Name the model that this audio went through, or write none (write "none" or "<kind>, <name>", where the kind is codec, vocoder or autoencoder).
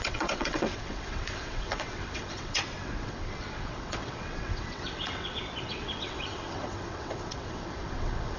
vocoder, WaveNeXt